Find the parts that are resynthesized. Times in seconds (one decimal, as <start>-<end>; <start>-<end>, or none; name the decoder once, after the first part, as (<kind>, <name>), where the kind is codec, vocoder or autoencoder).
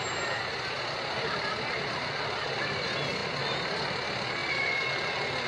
none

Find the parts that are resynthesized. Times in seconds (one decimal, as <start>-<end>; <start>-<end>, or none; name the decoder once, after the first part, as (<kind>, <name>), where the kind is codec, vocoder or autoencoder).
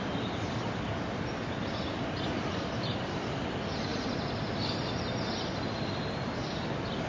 none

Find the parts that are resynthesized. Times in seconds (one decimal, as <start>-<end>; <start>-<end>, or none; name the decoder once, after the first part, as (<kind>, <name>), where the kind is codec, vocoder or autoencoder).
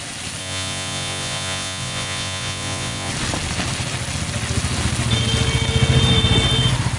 0.4-3.1 (vocoder, Vocos)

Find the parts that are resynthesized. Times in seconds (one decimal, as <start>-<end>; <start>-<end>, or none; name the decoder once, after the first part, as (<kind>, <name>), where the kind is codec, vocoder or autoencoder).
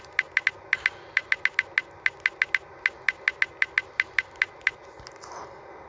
none